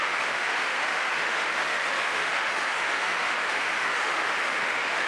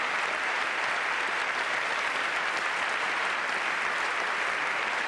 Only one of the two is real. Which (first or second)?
second